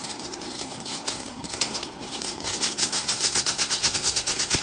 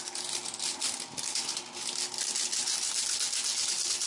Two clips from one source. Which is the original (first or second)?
second